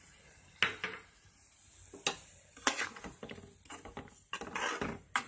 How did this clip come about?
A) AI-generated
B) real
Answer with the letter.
B